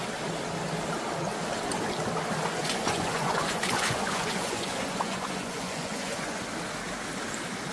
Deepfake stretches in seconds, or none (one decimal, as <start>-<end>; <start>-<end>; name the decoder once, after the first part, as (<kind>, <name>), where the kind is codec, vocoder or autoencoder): 2.6-6.4 (vocoder, Vocos)